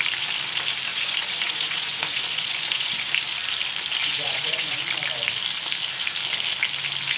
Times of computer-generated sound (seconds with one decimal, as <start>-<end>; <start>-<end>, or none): 0.9-3.1; 4.0-4.8